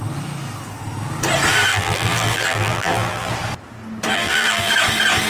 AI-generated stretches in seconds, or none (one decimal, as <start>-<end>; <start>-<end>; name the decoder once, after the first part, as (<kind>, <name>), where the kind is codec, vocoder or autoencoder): 1.7-3.3 (vocoder, BigVGAN v2); 4.1-4.7